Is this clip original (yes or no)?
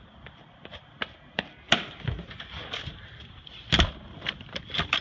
no